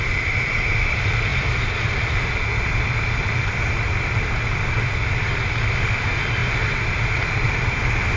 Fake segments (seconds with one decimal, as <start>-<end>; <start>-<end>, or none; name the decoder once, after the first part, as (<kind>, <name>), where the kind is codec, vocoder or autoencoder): none